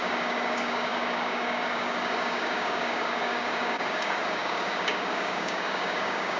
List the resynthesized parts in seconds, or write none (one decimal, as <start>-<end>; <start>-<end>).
0.0-6.4